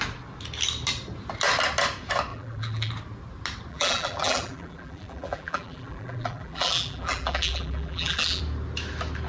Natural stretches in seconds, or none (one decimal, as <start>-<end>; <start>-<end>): 0.0-2.3; 2.9-3.7; 8.4-9.3